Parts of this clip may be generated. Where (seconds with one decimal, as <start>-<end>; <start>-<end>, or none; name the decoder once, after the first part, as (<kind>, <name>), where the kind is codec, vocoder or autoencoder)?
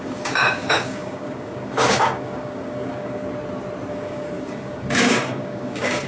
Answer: 0.0-3.2 (codec, DAC); 3.9-6.1